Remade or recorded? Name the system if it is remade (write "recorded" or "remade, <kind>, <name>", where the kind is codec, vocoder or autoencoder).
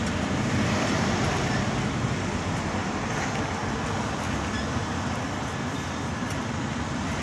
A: recorded